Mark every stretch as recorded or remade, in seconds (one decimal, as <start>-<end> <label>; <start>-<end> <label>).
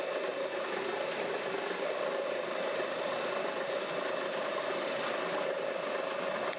0.0-1.1 recorded; 1.1-5.1 remade; 5.1-6.6 recorded